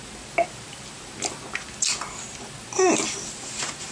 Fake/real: real